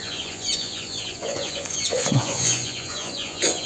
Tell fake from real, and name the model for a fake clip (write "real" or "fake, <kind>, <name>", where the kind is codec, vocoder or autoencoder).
fake, vocoder, Vocos